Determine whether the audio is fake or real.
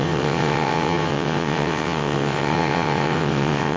fake